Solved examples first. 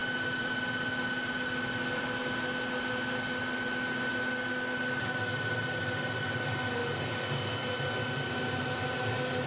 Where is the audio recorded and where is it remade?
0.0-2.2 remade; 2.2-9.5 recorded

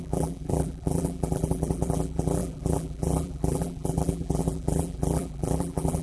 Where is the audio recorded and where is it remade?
0.0-6.0 remade

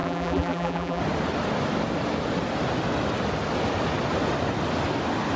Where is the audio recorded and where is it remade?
0.0-1.0 remade; 1.0-5.4 recorded

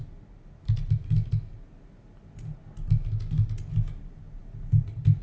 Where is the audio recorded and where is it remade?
0.0-5.2 recorded

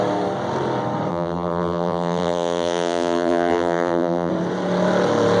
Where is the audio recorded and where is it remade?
0.0-1.1 recorded; 1.1-4.3 remade; 4.3-5.4 recorded